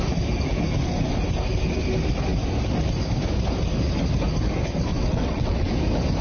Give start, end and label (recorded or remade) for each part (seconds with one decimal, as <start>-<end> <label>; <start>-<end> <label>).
0.0-4.9 recorded; 4.9-5.7 remade; 5.7-6.2 recorded

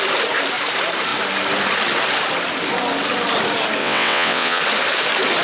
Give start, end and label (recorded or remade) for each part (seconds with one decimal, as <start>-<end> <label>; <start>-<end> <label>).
0.0-3.8 recorded; 3.8-4.6 remade; 4.6-5.4 recorded

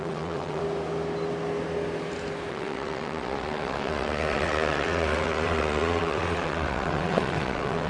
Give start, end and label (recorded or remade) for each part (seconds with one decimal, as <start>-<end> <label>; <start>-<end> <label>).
0.0-0.6 remade; 0.6-2.5 recorded; 2.5-7.9 remade

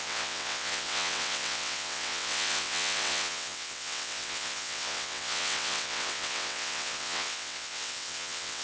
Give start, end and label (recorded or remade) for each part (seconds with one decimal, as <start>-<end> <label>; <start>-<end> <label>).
0.0-8.6 remade

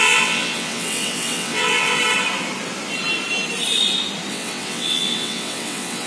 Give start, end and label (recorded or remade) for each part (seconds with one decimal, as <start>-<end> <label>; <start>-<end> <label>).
0.0-2.0 remade; 2.0-4.3 recorded; 4.3-6.1 remade